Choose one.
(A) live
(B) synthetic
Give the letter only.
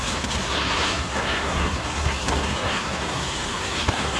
B